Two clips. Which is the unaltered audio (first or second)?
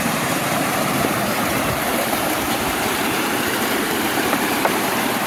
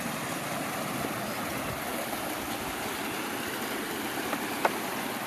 second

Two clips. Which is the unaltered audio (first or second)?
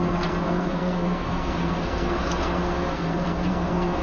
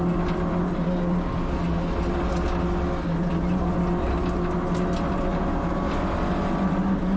second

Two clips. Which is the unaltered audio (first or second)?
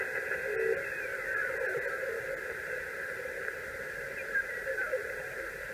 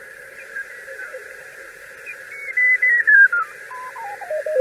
first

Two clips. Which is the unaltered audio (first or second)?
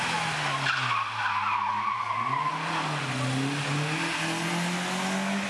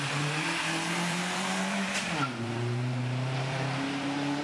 first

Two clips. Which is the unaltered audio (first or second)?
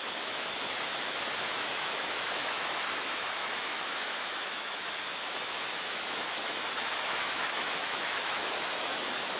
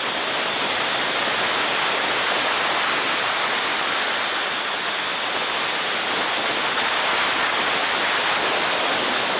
second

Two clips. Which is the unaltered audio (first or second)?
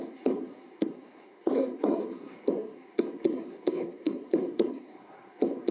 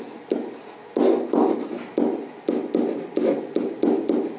second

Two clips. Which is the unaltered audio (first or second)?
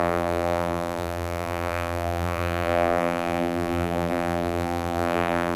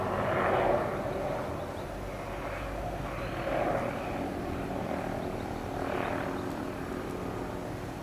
second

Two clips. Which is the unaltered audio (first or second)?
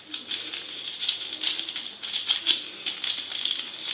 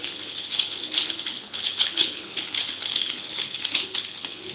first